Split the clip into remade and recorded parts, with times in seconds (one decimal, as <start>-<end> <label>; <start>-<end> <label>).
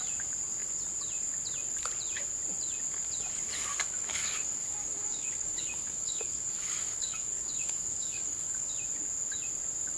0.0-3.7 recorded; 3.7-8.7 remade; 8.7-10.0 recorded